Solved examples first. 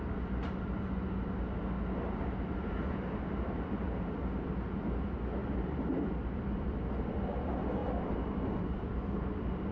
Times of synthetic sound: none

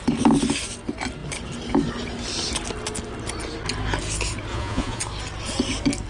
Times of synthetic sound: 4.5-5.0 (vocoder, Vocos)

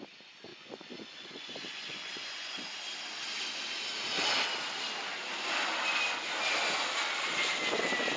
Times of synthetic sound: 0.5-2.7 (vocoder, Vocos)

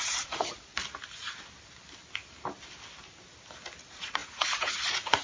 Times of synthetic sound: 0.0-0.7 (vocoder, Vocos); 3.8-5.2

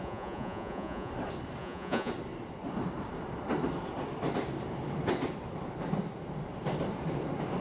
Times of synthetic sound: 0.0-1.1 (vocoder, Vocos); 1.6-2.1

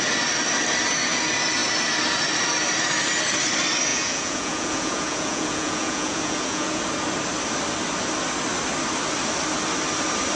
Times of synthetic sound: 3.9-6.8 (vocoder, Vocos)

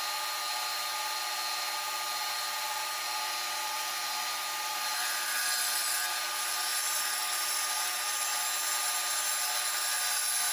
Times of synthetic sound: none

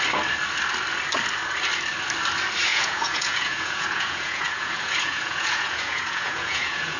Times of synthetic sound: 2.7-7.0 (vocoder, Vocos)